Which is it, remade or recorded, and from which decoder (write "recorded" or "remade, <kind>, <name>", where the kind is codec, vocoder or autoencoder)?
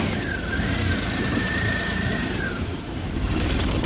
remade, vocoder, BigVGAN v2